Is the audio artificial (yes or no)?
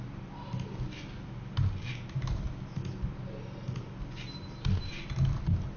no